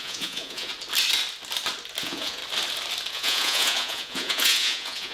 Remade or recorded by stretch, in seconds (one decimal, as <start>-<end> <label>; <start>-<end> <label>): 0.0-0.7 remade; 0.7-2.0 recorded; 2.0-2.4 remade; 2.4-3.1 recorded; 3.1-5.1 remade